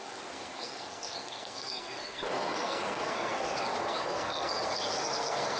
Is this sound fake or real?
fake